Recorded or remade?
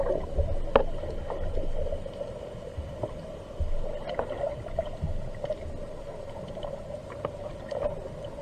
recorded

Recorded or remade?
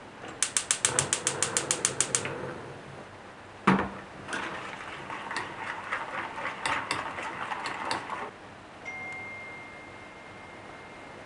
recorded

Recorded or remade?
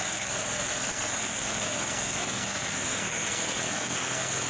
remade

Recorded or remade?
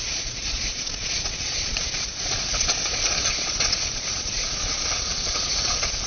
remade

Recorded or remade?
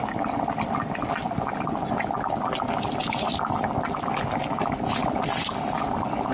recorded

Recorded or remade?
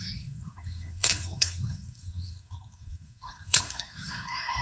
remade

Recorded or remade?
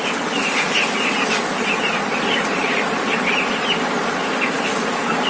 recorded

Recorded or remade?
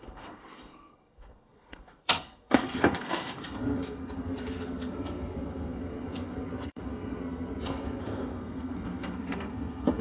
remade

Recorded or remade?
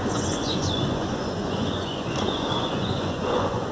remade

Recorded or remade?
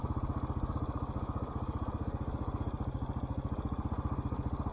recorded